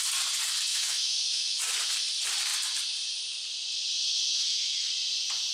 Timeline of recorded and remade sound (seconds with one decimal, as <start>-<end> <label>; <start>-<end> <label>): 0.0-0.7 recorded; 0.7-1.6 remade; 1.6-4.3 recorded; 4.3-4.9 remade; 4.9-5.5 recorded